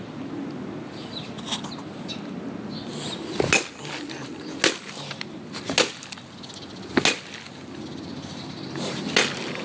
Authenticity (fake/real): real